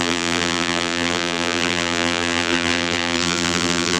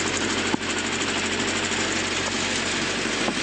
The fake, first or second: first